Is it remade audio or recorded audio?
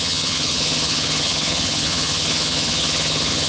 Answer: remade